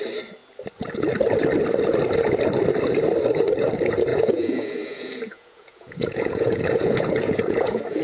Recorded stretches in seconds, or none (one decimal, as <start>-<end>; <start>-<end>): 0.0-4.1